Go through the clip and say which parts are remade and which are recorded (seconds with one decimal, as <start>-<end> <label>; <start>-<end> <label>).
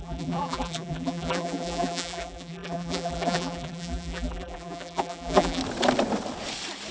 0.0-5.6 remade; 5.6-6.9 recorded